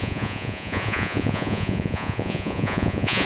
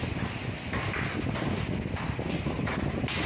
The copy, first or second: first